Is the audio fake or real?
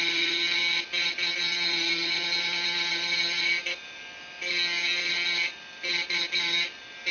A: real